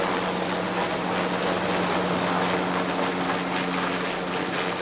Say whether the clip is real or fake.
real